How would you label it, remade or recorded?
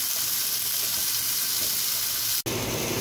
recorded